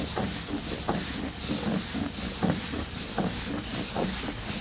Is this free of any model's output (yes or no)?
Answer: yes